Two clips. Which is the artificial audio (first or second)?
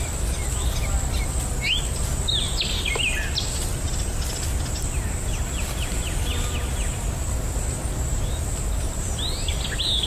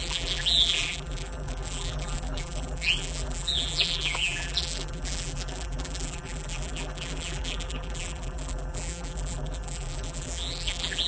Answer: second